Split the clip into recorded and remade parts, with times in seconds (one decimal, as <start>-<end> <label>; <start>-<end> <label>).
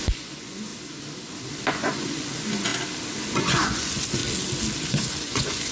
0.0-0.7 remade; 0.7-1.7 recorded; 1.7-2.7 remade; 2.7-3.3 recorded; 3.3-4.2 remade; 4.2-4.8 recorded; 4.8-5.7 remade